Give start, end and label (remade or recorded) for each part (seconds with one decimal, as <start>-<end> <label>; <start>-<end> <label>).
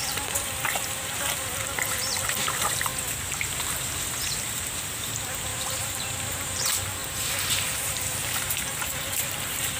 0.0-2.9 remade; 2.9-4.4 recorded; 4.4-7.0 remade; 7.0-7.8 recorded; 7.8-9.8 remade